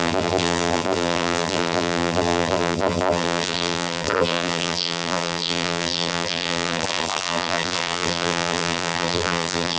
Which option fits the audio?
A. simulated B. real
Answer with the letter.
A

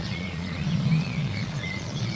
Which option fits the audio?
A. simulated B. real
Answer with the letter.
A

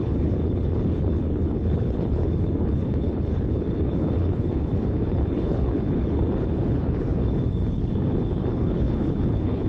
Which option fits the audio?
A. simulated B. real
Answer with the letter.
A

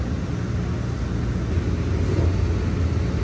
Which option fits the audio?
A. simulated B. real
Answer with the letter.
B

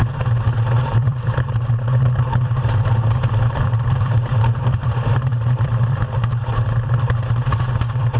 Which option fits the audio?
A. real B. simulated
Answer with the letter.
B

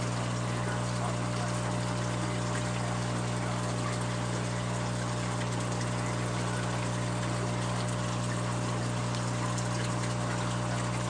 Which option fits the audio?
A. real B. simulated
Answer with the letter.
A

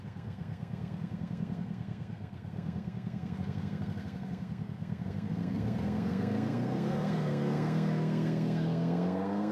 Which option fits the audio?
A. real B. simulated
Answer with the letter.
B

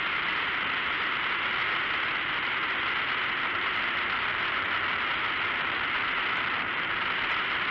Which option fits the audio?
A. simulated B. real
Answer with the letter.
B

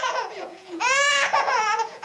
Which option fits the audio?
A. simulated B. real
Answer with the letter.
A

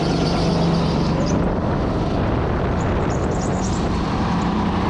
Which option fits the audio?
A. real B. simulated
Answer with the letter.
A